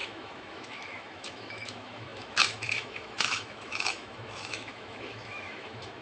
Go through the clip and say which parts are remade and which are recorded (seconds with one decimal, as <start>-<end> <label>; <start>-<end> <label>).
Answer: 0.0-6.0 remade